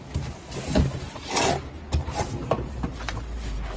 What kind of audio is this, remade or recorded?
remade